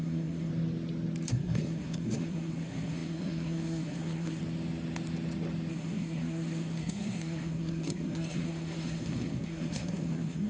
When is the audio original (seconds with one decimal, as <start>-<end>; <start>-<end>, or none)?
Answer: 0.5-1.3; 4.4-5.7